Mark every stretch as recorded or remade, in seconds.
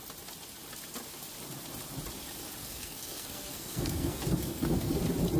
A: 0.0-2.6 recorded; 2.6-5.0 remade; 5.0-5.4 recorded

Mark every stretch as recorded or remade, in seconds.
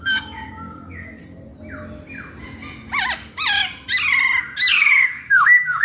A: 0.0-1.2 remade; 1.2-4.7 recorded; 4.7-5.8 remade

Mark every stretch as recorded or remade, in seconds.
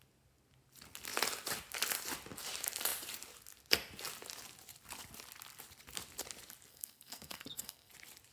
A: 0.0-6.7 recorded; 6.7-7.9 remade; 7.9-8.3 recorded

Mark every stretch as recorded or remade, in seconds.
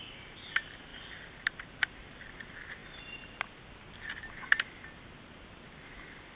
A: 0.0-0.9 recorded; 0.9-1.8 remade; 1.8-6.4 recorded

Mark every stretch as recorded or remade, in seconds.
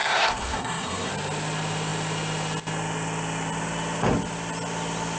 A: 0.0-1.1 remade; 1.1-5.2 recorded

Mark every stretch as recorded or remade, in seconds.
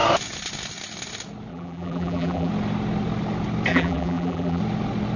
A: 0.0-1.5 recorded; 1.5-2.5 remade; 2.5-3.7 recorded; 3.7-4.6 remade; 4.6-5.2 recorded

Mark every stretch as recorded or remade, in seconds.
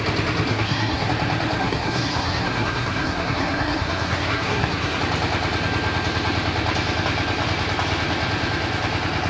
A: 0.0-0.5 recorded; 0.5-1.1 remade; 1.1-1.6 recorded; 1.6-5.0 remade; 5.0-9.3 recorded